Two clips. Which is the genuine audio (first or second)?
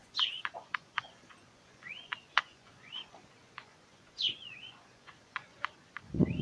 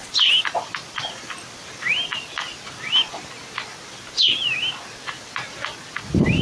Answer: second